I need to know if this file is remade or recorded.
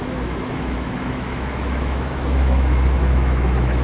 remade